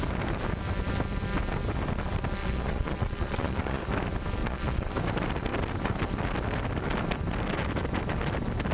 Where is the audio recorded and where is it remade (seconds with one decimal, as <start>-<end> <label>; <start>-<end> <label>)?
0.0-2.4 recorded; 2.4-3.8 remade; 3.8-4.4 recorded; 4.4-4.9 remade; 4.9-8.7 recorded